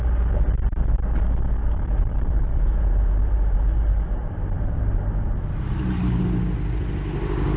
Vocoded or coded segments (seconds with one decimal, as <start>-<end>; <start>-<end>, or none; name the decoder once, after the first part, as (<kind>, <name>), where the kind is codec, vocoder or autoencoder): 1.6-6.2 (vocoder, BigVGAN v2)